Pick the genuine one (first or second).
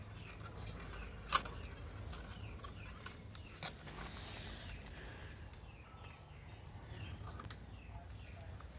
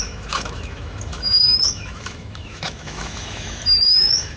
first